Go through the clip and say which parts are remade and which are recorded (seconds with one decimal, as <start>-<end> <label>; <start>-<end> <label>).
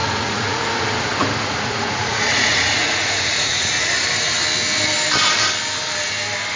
0.0-0.6 remade; 0.6-1.2 recorded; 1.2-3.7 remade; 3.7-6.6 recorded